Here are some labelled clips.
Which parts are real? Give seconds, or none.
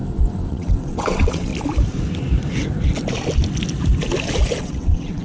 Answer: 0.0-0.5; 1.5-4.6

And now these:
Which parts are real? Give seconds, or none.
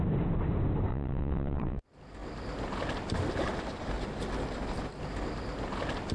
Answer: 0.0-0.9; 1.8-6.1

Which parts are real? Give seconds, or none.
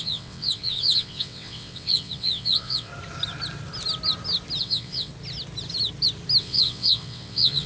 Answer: 2.9-4.6; 5.1-6.4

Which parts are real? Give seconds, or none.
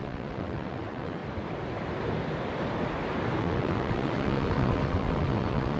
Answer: 1.2-3.4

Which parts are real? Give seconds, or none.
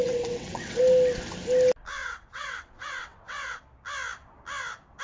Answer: 0.8-2.0; 3.6-5.0